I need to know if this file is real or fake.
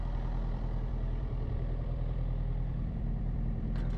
fake